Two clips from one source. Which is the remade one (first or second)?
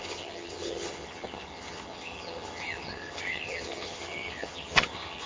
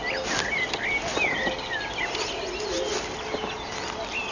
first